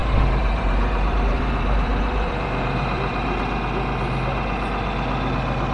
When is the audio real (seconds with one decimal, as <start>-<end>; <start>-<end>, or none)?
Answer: 3.4-5.7